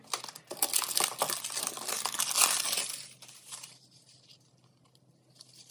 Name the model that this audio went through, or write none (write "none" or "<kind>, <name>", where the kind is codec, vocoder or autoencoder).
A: none